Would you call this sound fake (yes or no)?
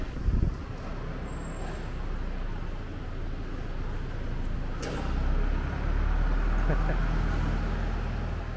no